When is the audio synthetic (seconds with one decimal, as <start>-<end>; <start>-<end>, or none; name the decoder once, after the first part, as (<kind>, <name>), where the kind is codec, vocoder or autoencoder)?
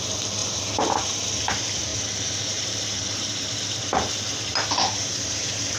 0.4-0.9 (vocoder, BigVGAN v2); 1.9-5.8